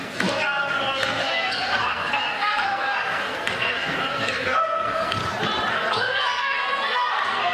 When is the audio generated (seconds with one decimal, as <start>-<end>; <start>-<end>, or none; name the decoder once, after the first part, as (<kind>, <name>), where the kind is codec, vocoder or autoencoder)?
0.0-5.2 (codec, SNAC); 5.7-7.5